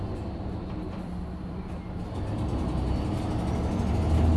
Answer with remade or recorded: recorded